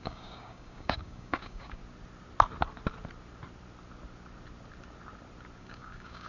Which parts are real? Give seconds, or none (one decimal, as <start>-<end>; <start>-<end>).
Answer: 1.8-5.6